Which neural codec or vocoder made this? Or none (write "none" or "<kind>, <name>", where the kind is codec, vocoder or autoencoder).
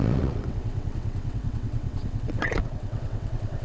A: vocoder, WaveNeXt